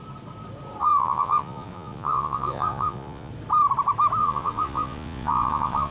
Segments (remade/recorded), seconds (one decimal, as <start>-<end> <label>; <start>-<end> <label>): 0.0-0.8 recorded; 0.8-3.3 remade; 3.3-4.2 recorded; 4.2-5.9 remade